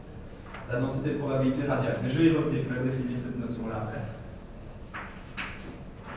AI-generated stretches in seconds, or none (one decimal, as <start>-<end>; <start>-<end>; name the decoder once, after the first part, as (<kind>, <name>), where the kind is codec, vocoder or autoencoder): none